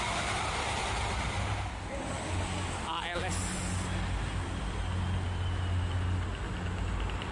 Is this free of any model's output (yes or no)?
yes